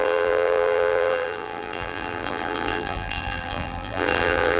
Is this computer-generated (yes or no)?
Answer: yes